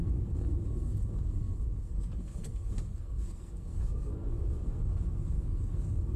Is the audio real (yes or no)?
no